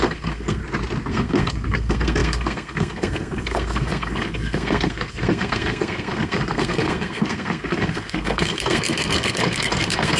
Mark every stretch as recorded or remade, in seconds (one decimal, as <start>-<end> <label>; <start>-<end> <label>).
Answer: 0.0-0.6 remade; 0.6-1.1 recorded; 1.1-10.2 remade